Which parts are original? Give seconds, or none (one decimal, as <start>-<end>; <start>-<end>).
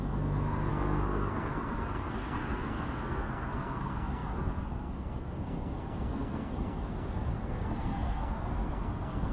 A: none